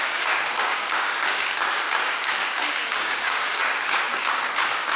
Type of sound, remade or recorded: remade